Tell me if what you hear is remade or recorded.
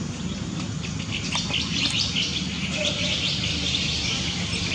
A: recorded